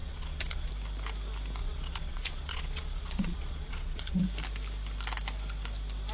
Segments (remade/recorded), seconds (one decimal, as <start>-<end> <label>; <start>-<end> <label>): 0.0-0.7 remade; 0.7-1.6 recorded; 1.6-4.2 remade; 4.2-6.1 recorded